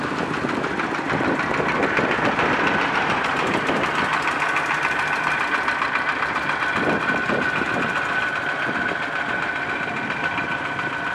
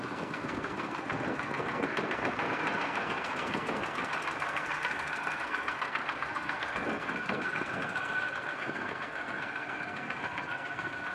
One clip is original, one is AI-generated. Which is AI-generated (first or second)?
second